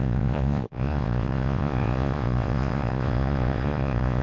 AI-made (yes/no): yes